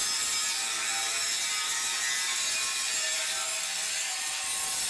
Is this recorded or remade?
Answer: recorded